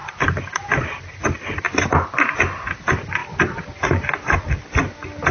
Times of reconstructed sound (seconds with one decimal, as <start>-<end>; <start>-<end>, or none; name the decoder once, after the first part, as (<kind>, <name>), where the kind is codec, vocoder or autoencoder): none

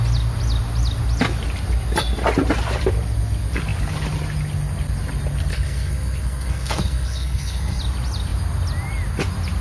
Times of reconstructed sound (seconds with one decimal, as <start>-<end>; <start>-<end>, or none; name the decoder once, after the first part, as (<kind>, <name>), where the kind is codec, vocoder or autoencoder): 5.5-7.8 (codec, SNAC)

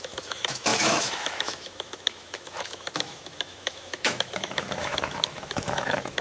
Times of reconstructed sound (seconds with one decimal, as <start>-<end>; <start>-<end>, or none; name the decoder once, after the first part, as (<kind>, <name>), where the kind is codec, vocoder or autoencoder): 0.0-6.2 (autoencoder, DAC-VAE)

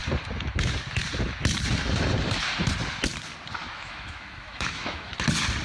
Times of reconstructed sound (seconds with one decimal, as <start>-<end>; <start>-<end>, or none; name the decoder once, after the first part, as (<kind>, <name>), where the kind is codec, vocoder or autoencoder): 3.6-5.1 (autoencoder, DAC-VAE)